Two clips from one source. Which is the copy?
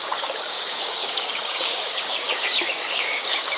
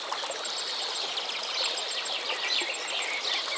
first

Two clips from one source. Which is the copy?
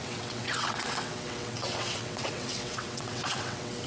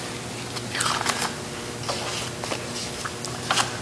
first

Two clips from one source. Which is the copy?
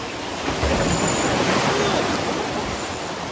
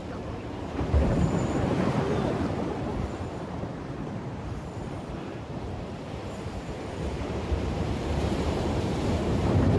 second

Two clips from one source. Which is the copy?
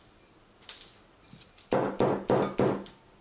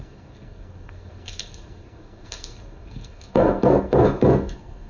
second